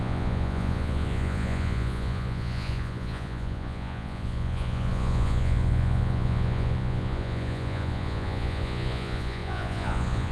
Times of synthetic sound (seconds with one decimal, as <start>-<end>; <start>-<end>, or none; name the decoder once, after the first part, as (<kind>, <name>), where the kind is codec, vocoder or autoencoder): 0.0-10.3 (vocoder, Vocos)